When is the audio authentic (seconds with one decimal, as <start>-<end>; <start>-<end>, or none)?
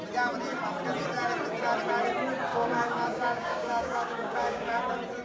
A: 0.0-2.5; 4.8-5.2